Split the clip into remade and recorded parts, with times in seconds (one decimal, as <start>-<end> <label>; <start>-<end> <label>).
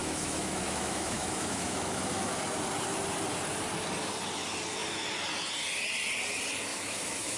0.0-2.3 remade; 2.3-6.7 recorded; 6.7-7.4 remade